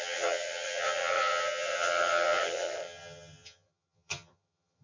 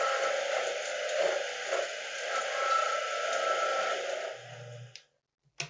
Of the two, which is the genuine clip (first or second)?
second